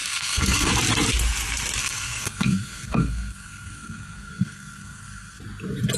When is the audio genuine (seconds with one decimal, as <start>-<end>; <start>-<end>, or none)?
0.7-1.8; 5.4-6.0